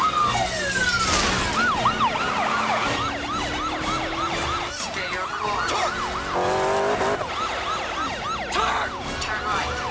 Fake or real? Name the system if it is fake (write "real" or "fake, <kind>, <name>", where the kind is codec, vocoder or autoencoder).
real